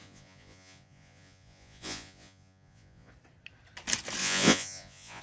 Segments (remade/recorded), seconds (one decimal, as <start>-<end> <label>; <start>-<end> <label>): 0.0-3.1 remade; 3.1-4.2 recorded; 4.2-5.2 remade